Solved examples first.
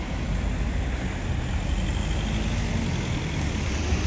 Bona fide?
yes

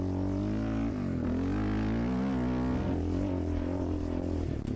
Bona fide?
yes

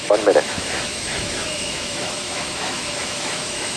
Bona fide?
no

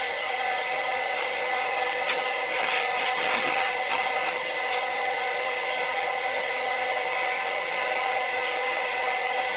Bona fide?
no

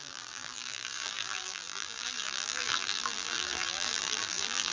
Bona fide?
no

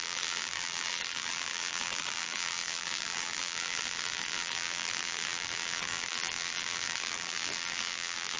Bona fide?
no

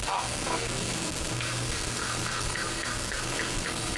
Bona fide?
no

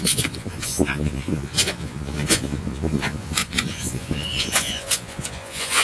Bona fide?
no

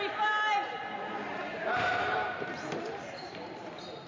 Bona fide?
no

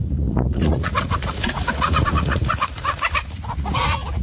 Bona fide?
no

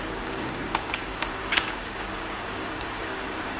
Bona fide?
no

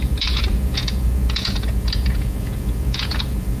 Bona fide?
no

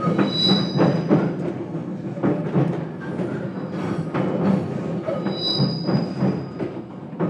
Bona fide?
yes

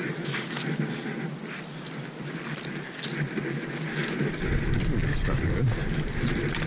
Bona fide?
yes